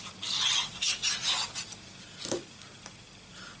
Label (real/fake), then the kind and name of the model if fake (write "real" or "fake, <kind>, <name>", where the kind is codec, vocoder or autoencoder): real